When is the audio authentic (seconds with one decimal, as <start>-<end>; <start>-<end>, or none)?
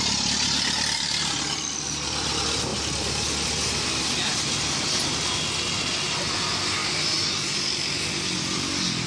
0.0-9.1